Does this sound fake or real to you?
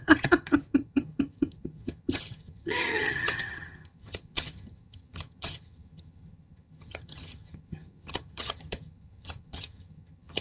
fake